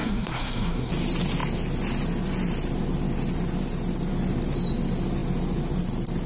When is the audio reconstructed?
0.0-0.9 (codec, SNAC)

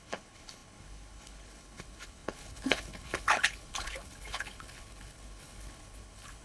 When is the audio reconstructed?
0.0-6.4 (codec, HILCodec)

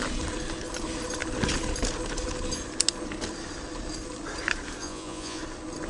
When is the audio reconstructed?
4.8-5.4 (vocoder, Vocos)

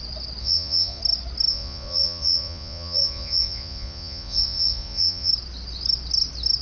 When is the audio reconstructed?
0.4-1.0 (vocoder, Vocos); 1.5-5.3

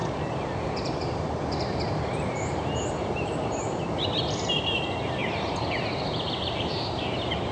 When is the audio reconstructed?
0.0-5.2 (vocoder, BigVGAN v2); 7.0-7.5

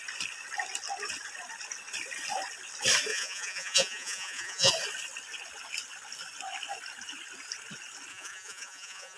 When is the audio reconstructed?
3.1-4.7 (vocoder, Vocos); 8.1-9.2

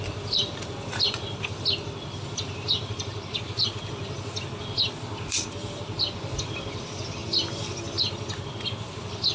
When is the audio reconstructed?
0.0-9.3 (vocoder, BigVGAN v2)